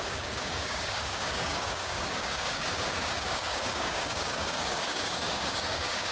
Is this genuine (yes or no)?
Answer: no